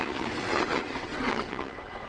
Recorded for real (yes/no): no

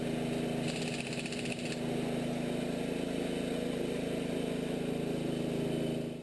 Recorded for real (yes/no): yes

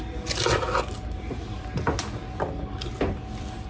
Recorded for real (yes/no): yes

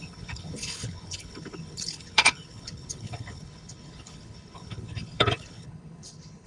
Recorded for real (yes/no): no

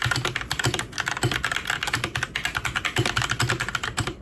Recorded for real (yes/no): yes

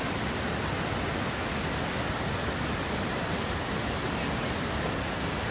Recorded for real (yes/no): yes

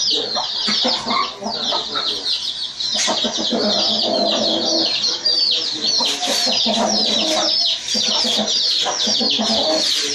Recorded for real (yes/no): yes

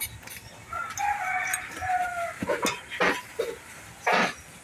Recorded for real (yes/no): yes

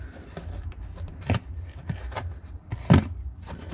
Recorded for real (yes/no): yes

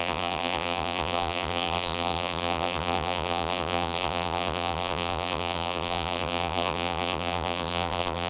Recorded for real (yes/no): no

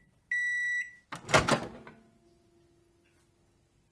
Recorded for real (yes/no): yes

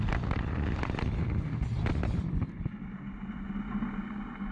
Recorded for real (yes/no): yes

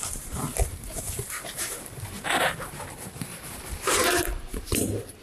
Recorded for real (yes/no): no